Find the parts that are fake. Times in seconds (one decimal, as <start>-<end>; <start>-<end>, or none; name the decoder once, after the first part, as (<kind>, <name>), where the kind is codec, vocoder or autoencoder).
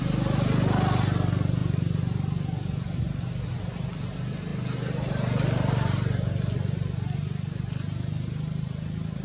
none